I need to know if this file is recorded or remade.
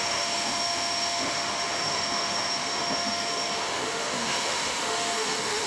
remade